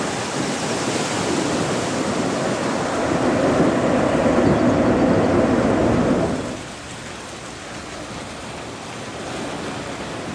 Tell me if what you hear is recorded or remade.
recorded